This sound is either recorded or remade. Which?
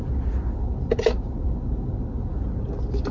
recorded